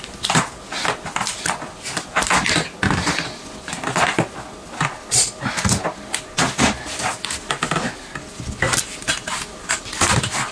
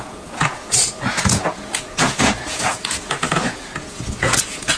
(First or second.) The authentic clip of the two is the first